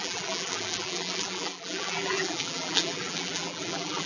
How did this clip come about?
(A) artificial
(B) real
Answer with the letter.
A